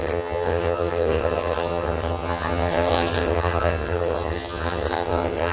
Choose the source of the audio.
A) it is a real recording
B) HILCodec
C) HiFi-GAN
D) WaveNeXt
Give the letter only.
C